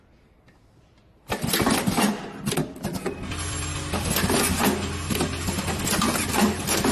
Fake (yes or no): no